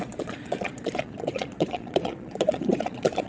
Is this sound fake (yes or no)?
yes